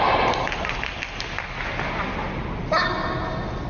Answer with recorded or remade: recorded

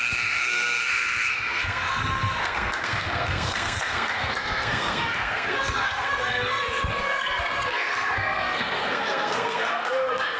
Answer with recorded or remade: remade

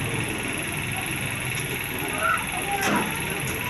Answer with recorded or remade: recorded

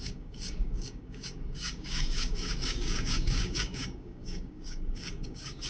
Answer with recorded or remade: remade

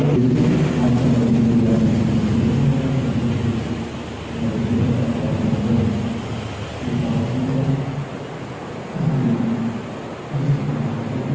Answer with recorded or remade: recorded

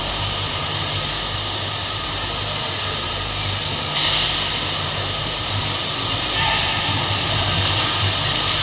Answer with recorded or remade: recorded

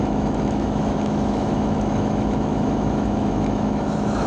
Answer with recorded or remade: remade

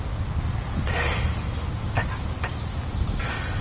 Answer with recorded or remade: recorded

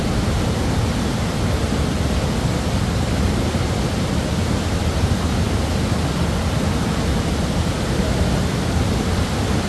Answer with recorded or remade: recorded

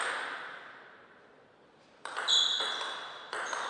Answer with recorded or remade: recorded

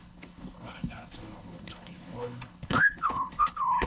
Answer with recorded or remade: remade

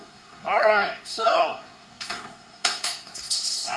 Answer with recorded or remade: remade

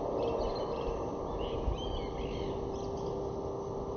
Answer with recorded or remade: recorded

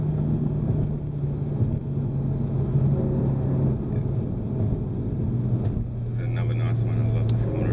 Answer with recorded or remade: recorded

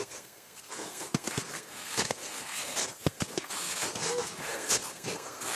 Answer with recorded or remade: remade